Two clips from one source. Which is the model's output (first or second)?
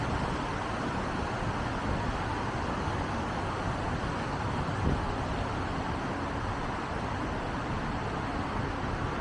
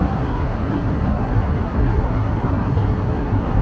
second